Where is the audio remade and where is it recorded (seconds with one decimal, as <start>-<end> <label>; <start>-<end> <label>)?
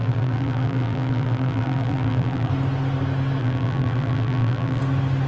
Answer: 0.0-2.5 remade; 2.5-3.4 recorded; 3.4-4.8 remade; 4.8-5.3 recorded